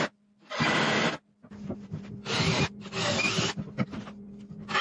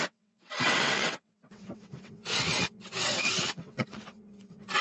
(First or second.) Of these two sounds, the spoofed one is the second